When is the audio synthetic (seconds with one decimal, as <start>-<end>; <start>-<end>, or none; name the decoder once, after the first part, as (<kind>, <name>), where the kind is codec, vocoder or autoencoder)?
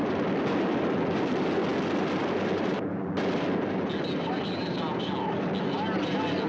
none